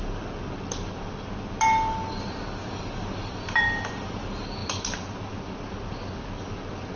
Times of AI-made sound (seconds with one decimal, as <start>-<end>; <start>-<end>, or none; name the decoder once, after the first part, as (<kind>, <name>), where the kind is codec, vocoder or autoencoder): none